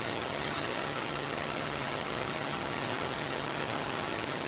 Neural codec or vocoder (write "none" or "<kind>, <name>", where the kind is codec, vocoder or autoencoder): vocoder, HiFi-GAN